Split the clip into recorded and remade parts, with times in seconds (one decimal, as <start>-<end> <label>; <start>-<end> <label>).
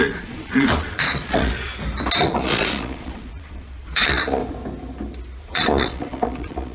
0.0-1.7 remade; 1.7-2.2 recorded; 2.2-4.4 remade; 4.4-5.4 recorded; 5.4-6.7 remade